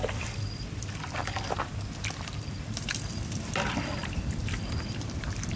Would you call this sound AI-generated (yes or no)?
yes